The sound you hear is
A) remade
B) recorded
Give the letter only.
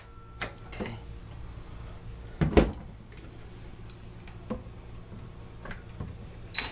B